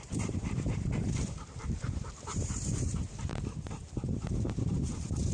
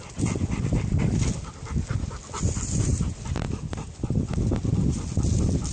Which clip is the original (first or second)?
second